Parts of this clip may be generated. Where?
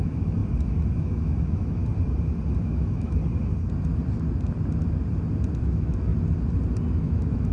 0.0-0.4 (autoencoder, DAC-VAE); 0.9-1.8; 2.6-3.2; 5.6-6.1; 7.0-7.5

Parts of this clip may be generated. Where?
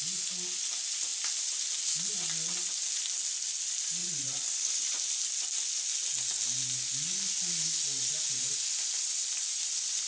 4.0-5.1 (vocoder, BigVGAN v2)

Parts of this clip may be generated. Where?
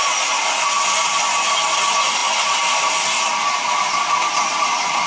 none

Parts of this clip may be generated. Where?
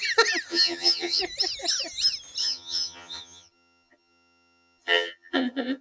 0.5-1.2 (vocoder, HiFi-GAN); 2.4-5.8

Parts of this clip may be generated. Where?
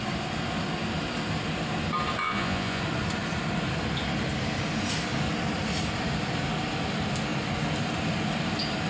2.2-2.8 (vocoder, Vocos)